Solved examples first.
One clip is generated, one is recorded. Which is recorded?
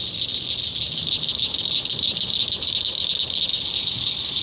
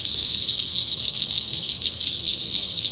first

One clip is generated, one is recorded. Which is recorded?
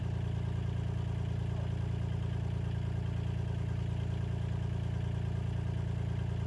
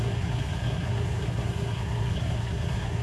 first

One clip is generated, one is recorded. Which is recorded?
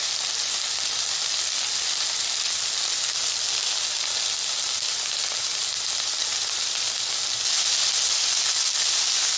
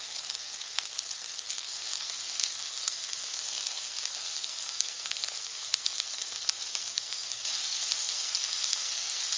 first